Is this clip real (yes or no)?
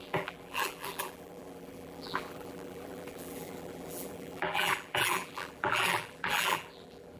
no